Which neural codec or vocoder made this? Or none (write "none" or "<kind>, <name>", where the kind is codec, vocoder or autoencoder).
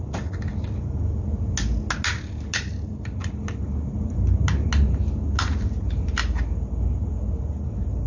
none